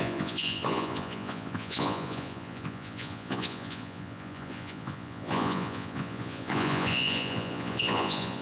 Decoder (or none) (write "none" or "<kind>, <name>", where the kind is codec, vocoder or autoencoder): vocoder, Vocos